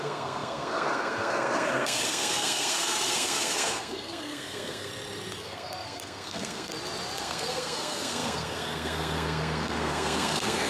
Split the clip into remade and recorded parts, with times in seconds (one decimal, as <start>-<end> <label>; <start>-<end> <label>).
0.0-4.9 remade; 4.9-5.4 recorded; 5.4-6.7 remade; 6.7-7.2 recorded; 7.2-10.7 remade